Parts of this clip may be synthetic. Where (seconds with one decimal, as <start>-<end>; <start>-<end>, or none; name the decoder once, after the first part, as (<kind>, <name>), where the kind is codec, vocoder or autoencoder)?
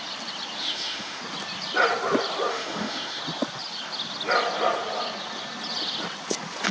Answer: 0.6-1.2 (autoencoder, DAC-VAE); 2.5-3.2